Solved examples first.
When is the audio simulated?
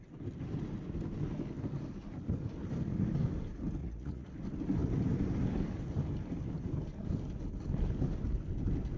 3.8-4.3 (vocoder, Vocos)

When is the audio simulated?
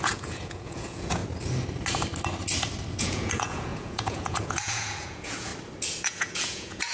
0.0-1.2 (vocoder, Vocos); 3.0-5.5; 6.0-6.9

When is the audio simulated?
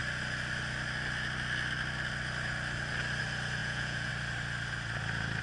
3.6-4.1 (vocoder, Vocos)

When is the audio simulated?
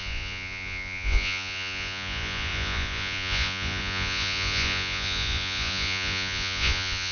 0.0-7.1 (vocoder, Vocos)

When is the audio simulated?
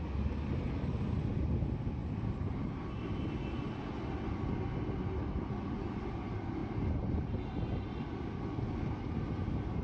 none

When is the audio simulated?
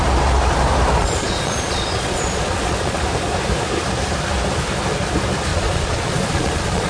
1.0-3.0 (vocoder, Vocos); 5.5-6.9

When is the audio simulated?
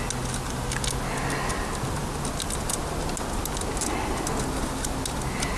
none